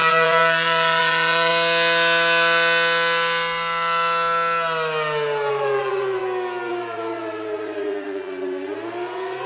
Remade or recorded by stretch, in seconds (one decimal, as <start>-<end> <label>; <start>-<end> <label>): 0.0-1.5 remade; 1.5-5.5 recorded; 5.5-6.2 remade; 6.2-6.7 recorded; 6.7-9.5 remade

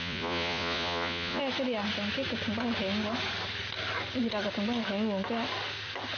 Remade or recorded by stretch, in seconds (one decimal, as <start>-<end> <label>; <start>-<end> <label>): 0.0-1.4 remade; 1.4-6.2 recorded